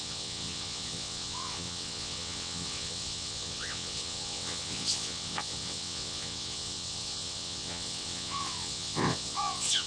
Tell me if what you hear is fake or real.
fake